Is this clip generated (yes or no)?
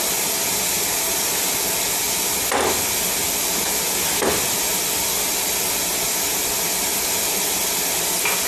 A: no